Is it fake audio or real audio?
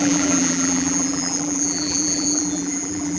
fake